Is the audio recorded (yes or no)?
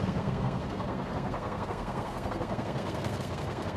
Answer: no